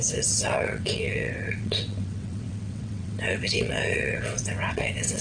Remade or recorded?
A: remade